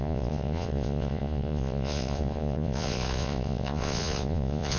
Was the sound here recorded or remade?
remade